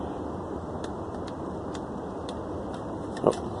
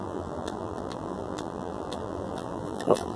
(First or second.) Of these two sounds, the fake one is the second